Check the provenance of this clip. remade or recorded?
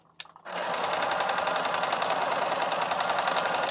recorded